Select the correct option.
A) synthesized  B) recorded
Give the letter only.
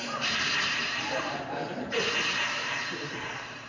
A